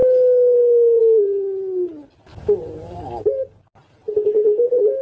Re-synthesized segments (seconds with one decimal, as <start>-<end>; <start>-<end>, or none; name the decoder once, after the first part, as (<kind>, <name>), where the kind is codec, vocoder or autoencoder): none